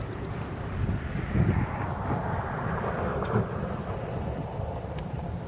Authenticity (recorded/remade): recorded